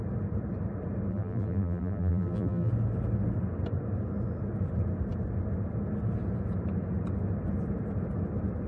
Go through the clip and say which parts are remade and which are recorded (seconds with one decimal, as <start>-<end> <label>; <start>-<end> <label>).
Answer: 0.0-1.1 recorded; 1.1-2.7 remade; 2.7-8.7 recorded

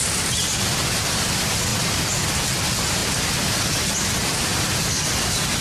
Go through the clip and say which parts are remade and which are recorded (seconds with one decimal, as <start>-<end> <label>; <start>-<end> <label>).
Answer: 0.0-1.7 remade; 1.7-2.3 recorded; 2.3-3.0 remade; 3.0-4.6 recorded; 4.6-5.6 remade

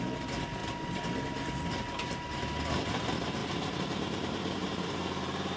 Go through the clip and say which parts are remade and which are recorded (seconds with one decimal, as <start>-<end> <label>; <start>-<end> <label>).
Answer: 0.0-3.4 recorded; 3.4-5.6 remade

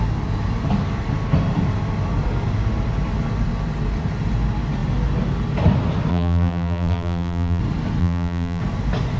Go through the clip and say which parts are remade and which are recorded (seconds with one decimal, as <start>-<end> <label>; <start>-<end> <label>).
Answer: 0.0-6.1 recorded; 6.1-7.6 remade; 7.6-8.0 recorded; 8.0-8.6 remade; 8.6-9.2 recorded

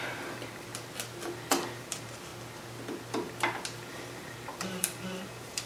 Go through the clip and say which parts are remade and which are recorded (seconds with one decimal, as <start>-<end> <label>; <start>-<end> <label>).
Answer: 0.0-0.7 remade; 0.7-1.8 recorded; 1.8-2.3 remade; 2.3-3.9 recorded; 3.9-5.7 remade